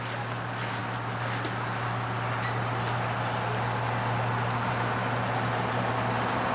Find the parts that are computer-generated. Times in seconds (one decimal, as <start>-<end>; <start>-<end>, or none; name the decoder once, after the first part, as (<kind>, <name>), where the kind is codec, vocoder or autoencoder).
none